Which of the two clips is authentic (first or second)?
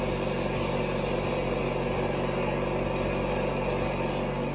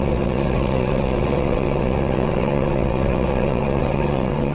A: first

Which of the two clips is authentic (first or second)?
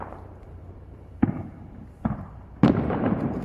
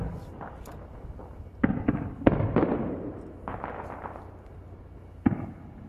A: second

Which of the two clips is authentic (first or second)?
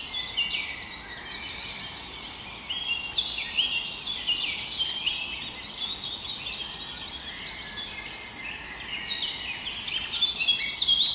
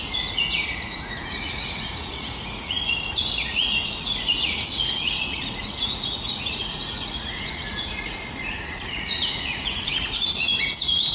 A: first